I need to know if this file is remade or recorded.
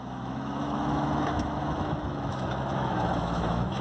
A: remade